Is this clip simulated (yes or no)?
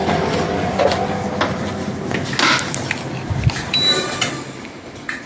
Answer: no